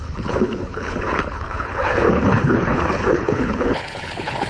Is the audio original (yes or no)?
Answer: no